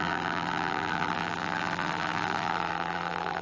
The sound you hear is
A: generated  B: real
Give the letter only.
A